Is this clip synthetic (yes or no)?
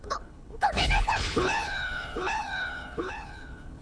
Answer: yes